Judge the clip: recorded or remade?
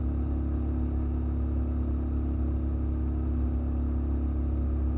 recorded